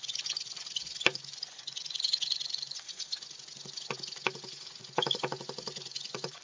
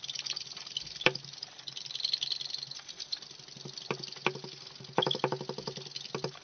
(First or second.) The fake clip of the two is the first